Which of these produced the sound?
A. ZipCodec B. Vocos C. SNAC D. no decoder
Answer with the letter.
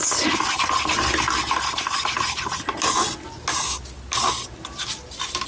D